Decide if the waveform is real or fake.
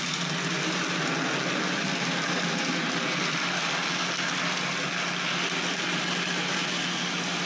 real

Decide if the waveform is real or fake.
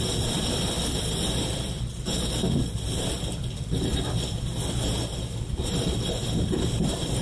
fake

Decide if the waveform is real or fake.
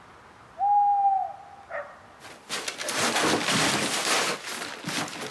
real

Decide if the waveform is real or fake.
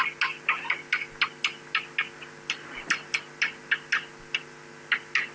real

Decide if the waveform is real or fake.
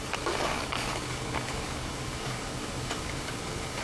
fake